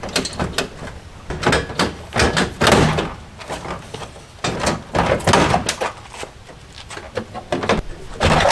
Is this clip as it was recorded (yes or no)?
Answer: yes